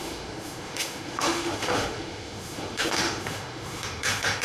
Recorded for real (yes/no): no